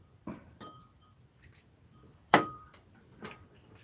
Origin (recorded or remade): remade